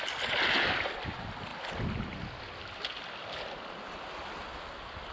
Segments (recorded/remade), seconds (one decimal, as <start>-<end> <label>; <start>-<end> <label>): 0.0-5.1 recorded